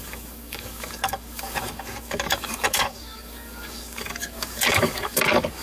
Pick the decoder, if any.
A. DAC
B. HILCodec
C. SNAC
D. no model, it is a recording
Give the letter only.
A